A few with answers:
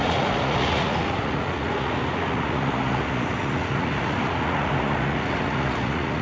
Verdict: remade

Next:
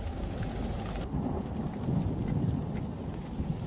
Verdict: recorded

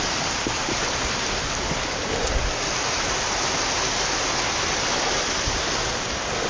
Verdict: recorded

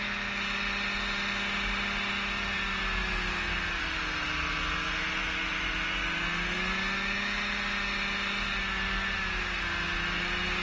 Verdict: recorded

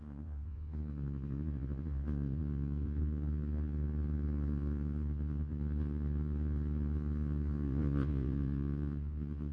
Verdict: remade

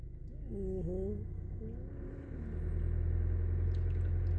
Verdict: recorded